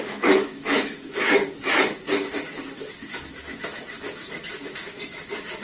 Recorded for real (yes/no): no